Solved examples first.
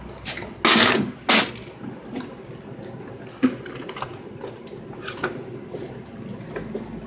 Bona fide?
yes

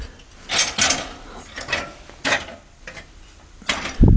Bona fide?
yes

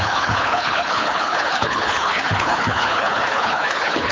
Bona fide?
no